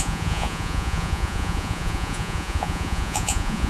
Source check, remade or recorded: remade